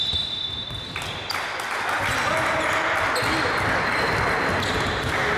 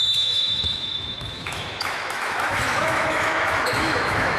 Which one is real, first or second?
first